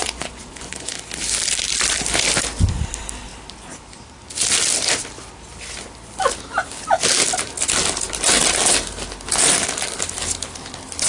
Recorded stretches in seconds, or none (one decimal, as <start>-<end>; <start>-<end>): 0.9-11.1

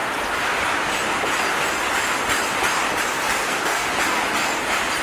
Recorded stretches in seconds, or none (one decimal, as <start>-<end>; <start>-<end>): 0.0-3.4; 3.9-5.0

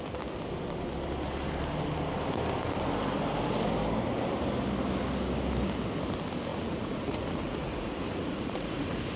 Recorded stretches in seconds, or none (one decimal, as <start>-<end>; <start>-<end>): 0.0-6.5

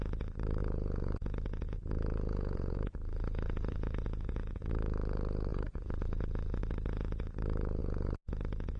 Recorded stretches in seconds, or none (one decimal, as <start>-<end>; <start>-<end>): 0.0-0.6; 4.7-5.5; 6.6-7.8

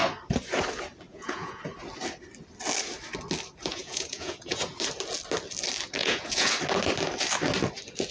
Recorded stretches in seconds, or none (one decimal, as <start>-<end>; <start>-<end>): 0.0-1.1; 1.6-3.7; 4.7-6.0; 6.5-8.1

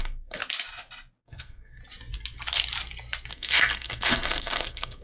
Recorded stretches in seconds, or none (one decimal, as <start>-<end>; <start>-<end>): 0.4-1.2; 1.8-3.3